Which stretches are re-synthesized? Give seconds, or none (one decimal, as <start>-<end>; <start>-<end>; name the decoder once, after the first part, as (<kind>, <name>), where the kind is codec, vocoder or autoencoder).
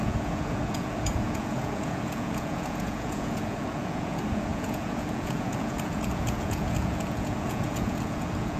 0.0-8.6 (vocoder, Vocos)